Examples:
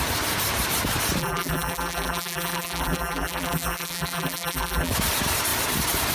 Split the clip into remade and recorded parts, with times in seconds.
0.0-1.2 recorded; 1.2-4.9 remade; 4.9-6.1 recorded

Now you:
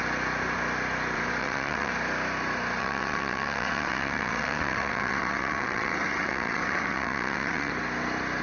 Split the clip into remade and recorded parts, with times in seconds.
0.0-1.4 recorded; 1.4-1.9 remade; 1.9-2.8 recorded; 2.8-7.7 remade; 7.7-8.4 recorded

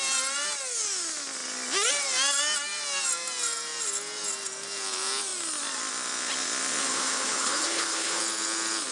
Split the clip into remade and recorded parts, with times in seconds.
0.0-6.8 recorded; 6.8-8.2 remade; 8.2-8.9 recorded

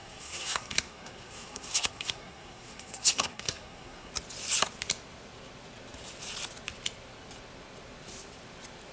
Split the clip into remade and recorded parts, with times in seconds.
0.0-4.1 remade; 4.1-8.9 recorded